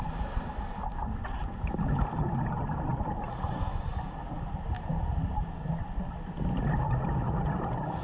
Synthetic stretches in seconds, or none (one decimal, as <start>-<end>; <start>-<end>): none